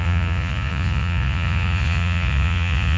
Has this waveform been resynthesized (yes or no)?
yes